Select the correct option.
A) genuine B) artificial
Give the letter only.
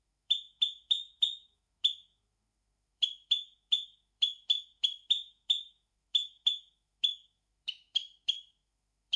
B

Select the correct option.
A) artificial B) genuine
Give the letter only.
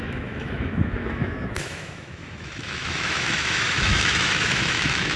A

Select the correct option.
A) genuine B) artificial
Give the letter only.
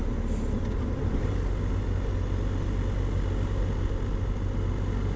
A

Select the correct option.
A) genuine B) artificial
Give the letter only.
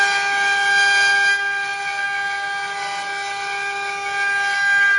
A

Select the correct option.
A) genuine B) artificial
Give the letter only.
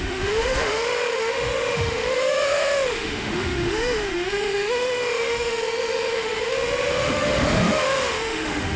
B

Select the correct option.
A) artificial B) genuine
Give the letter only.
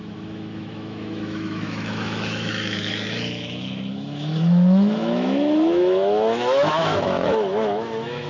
A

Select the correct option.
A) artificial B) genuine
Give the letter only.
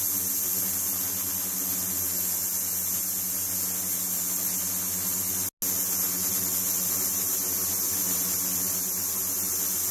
B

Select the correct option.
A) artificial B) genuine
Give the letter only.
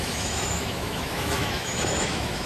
A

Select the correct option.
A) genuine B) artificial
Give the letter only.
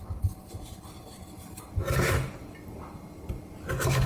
A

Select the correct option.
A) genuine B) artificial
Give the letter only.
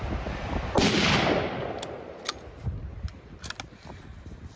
A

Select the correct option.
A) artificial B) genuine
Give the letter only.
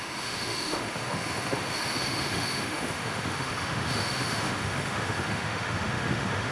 A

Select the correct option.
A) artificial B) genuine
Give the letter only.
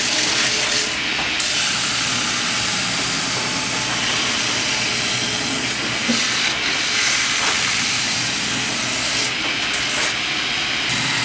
B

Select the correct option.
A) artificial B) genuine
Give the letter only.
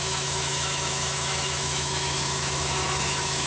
A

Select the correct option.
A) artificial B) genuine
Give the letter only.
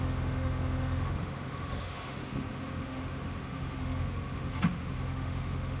A